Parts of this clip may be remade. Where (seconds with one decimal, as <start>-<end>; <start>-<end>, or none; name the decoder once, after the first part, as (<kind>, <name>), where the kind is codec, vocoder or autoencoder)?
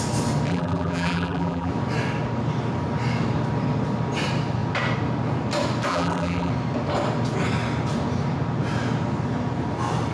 0.5-1.7 (vocoder, BigVGAN v2); 5.9-6.5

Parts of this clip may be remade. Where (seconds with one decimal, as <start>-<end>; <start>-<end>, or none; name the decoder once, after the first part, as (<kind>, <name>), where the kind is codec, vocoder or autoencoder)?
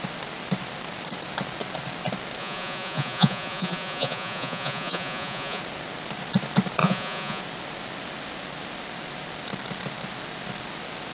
2.4-5.6 (vocoder, Vocos); 6.8-7.4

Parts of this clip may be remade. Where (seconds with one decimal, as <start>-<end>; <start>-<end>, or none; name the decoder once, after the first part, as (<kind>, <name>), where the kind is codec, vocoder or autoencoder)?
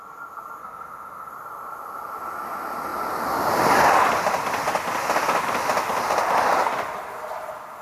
0.6-1.3 (autoencoder, DAC-VAE)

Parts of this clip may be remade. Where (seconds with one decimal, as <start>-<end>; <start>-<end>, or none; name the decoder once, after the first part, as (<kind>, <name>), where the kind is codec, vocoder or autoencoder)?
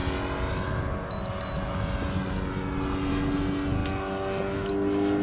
none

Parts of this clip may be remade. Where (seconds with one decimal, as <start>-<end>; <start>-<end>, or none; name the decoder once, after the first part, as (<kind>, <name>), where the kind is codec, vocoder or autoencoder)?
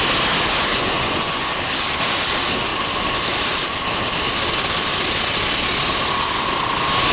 0.7-1.5 (vocoder, Vocos)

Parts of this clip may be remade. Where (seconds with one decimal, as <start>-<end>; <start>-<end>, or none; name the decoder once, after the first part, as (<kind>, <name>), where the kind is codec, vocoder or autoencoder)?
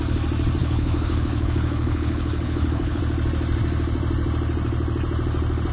0.6-3.0 (codec, HILCodec)